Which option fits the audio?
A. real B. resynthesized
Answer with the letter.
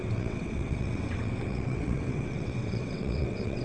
B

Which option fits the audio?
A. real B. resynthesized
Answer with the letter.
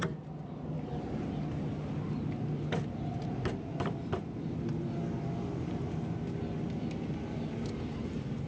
A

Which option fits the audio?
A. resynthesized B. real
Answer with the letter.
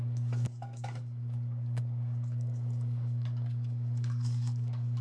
A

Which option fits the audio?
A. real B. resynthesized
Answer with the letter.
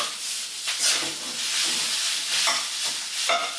A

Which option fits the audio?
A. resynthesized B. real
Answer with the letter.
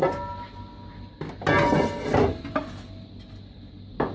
B